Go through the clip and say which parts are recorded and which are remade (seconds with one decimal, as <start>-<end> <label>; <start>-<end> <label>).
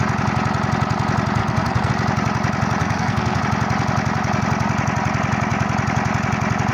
0.0-1.4 recorded; 1.4-1.9 remade; 1.9-2.8 recorded; 2.8-3.4 remade; 3.4-6.7 recorded